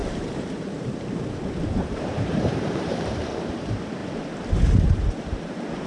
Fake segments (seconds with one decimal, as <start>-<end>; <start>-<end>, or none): 0.0-4.0; 4.5-5.9